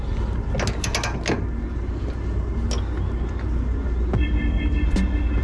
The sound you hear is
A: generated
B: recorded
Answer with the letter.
B